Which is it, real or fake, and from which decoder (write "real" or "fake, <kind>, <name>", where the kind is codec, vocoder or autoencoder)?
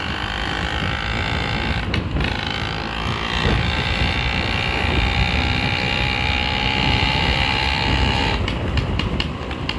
fake, vocoder, BigVGAN v2